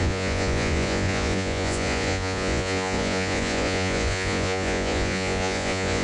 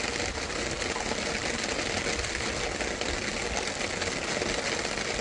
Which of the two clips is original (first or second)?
second